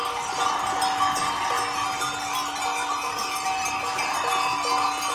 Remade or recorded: recorded